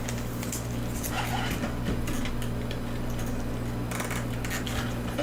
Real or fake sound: real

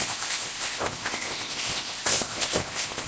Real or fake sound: fake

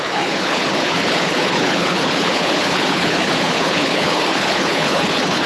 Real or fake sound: fake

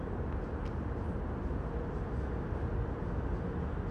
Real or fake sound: real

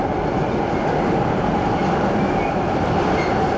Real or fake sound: real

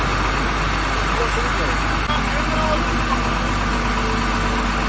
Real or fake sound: real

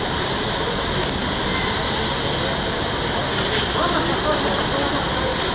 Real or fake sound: real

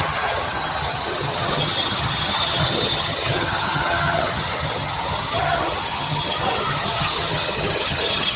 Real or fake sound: fake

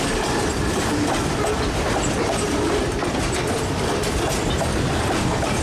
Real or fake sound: fake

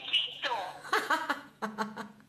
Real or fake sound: fake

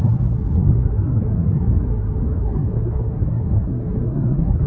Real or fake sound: fake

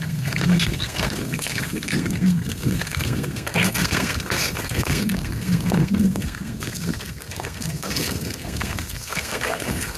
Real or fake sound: fake